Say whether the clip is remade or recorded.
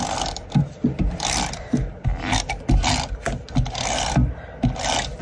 recorded